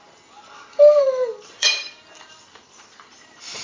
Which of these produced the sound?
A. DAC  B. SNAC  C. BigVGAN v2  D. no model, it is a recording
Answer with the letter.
C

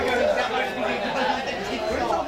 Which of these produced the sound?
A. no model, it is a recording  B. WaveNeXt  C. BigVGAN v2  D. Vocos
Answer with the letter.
A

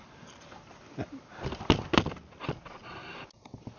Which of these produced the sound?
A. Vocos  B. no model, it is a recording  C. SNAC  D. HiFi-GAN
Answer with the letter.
B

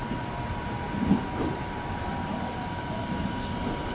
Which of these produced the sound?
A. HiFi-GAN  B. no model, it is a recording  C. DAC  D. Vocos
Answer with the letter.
B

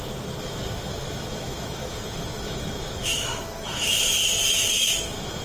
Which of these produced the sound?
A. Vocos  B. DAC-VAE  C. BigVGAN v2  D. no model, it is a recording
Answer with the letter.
B